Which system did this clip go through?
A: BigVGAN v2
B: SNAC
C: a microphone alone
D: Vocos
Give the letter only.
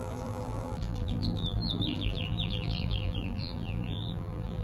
A